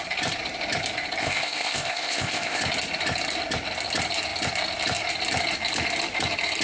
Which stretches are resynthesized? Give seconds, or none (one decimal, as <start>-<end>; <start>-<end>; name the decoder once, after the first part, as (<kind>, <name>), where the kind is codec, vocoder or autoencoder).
1.2-2.6 (codec, ZipCodec)